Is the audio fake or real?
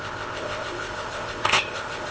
fake